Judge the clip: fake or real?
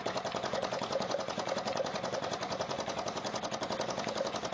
fake